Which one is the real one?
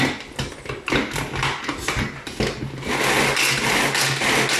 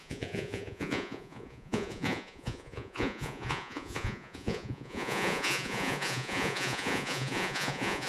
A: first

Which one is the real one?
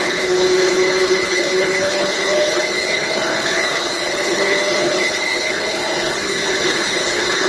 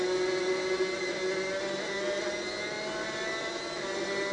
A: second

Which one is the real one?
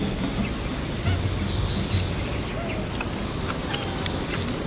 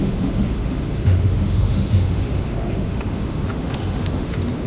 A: first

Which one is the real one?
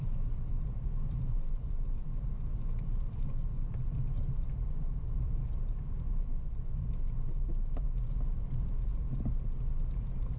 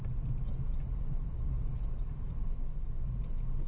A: second